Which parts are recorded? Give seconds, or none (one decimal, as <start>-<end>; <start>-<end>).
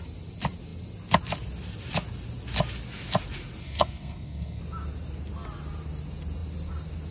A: 0.0-3.6; 4.6-7.1